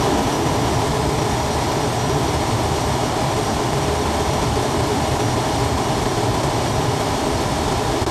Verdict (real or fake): real